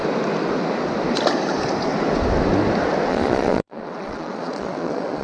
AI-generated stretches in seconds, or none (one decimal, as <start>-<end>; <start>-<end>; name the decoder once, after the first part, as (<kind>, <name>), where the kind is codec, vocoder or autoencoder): 3.1-5.2 (vocoder, Vocos)